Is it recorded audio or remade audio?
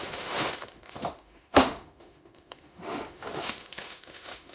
remade